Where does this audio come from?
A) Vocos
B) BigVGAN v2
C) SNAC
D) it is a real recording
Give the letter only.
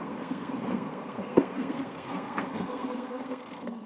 C